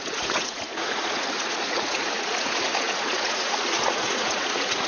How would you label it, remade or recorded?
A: remade